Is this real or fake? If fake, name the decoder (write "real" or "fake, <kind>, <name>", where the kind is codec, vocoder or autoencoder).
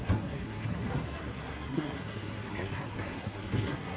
fake, codec, SNAC